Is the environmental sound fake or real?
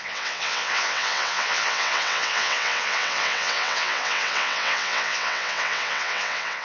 fake